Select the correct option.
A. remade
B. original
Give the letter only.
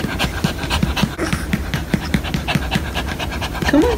A